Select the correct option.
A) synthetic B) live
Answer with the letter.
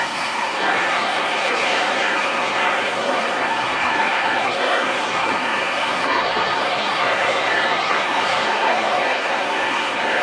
A